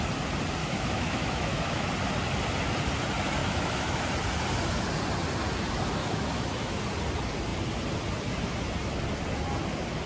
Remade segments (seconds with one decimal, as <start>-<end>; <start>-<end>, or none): 0.6-1.9; 3.4-4.0; 6.0-6.8